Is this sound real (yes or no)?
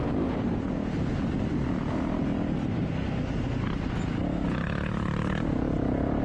yes